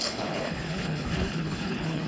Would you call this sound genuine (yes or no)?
no